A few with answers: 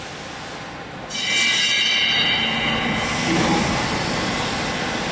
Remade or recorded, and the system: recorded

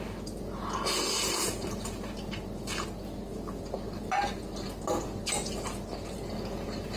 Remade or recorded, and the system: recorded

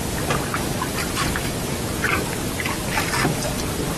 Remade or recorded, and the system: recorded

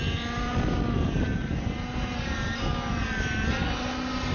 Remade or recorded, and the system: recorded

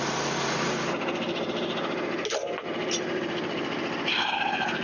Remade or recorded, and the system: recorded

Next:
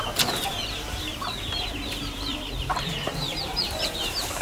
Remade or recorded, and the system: remade, vocoder, BigVGAN v2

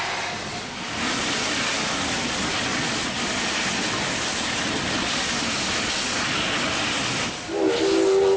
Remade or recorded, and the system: recorded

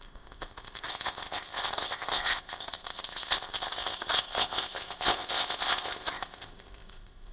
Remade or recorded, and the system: remade, codec, ZipCodec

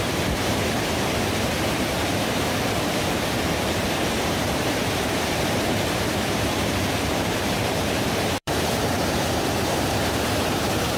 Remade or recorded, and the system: remade, vocoder, BigVGAN v2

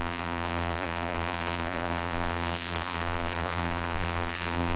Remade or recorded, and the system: remade, vocoder, BigVGAN v2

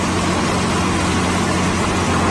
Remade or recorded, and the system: recorded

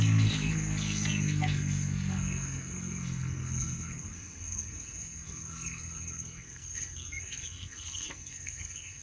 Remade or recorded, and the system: remade, codec, SNAC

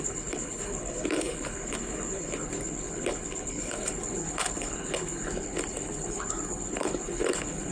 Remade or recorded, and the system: remade, codec, HILCodec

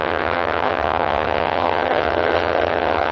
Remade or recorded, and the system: remade, vocoder, HiFi-GAN